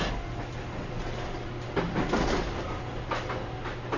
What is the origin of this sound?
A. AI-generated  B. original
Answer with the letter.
B